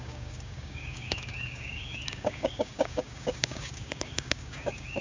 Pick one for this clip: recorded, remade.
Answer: remade